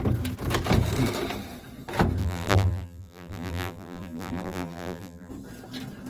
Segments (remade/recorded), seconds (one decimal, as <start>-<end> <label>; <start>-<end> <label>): 0.0-2.2 recorded; 2.2-5.3 remade; 5.3-6.1 recorded